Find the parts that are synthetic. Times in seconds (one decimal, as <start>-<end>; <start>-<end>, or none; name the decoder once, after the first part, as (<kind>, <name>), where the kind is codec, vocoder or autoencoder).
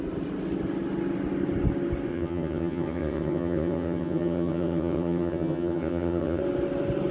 2.1-6.4 (vocoder, HiFi-GAN)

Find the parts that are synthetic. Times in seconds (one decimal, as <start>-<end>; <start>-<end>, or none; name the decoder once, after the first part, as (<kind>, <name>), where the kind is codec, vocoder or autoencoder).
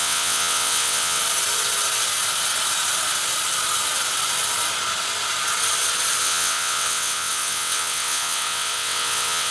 0.0-1.2 (vocoder, WaveNeXt); 6.2-9.5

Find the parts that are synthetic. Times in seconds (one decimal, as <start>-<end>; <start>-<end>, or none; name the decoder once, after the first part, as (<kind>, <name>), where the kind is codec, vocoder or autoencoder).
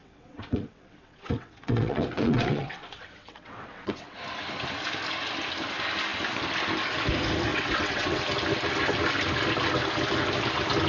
0.0-4.2 (vocoder, WaveNeXt); 7.5-8.2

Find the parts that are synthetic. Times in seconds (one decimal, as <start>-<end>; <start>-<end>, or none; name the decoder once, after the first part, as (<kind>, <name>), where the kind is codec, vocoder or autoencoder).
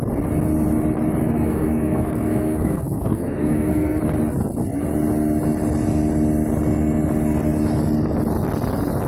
1.2-4.0 (codec, SNAC)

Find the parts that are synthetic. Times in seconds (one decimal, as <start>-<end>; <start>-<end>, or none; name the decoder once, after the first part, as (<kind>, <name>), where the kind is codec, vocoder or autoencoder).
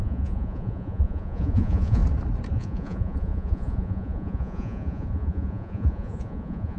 0.0-2.0 (vocoder, Vocos); 2.5-6.8